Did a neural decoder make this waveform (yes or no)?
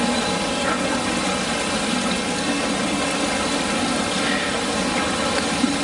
no